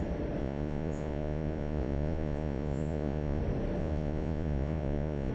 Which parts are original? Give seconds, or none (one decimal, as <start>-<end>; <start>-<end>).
0.0-0.4; 3.4-3.8